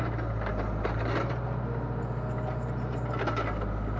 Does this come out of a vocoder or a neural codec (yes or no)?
no